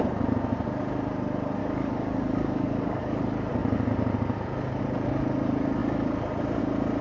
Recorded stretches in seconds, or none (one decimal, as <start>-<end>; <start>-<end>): 0.0-1.6; 3.2-7.0